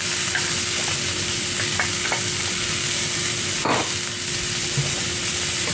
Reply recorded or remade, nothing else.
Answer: recorded